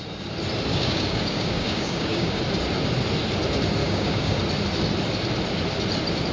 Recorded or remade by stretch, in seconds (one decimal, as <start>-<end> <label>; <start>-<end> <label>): 0.0-0.7 recorded; 0.7-2.4 remade; 2.4-3.8 recorded; 3.8-4.4 remade; 4.4-6.3 recorded